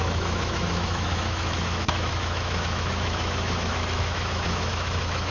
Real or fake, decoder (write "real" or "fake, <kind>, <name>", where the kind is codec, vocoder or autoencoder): fake, autoencoder, DAC-VAE